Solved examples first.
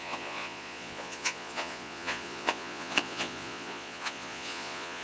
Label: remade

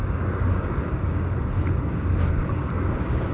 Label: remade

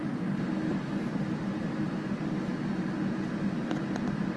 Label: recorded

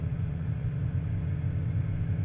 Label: remade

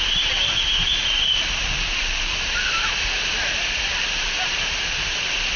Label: recorded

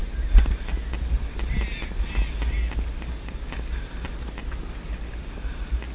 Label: recorded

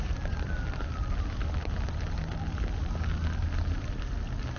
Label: recorded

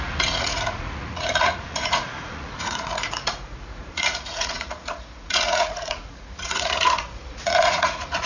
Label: remade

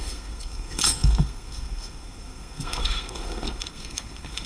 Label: remade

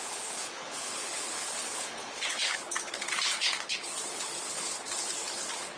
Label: remade